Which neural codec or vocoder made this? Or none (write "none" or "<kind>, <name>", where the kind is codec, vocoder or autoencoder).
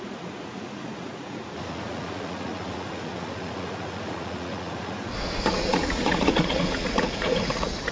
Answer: vocoder, Vocos